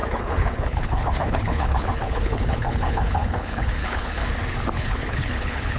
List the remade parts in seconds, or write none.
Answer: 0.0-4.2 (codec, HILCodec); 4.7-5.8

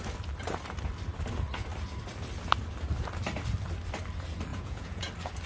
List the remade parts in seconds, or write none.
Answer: 4.5-5.1 (vocoder, Vocos)

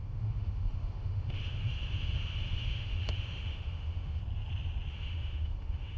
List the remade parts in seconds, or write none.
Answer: 0.0-4.2 (autoencoder, DAC-VAE); 4.9-6.0